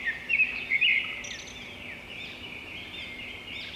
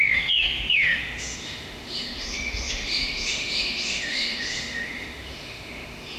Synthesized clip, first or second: second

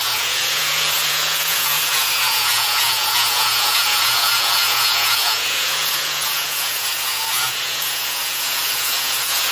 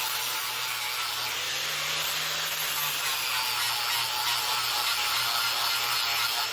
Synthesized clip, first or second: first